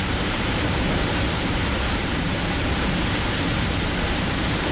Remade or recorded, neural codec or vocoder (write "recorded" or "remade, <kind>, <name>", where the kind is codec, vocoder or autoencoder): remade, vocoder, BigVGAN v2